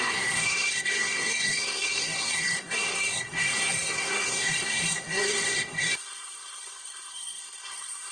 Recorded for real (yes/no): no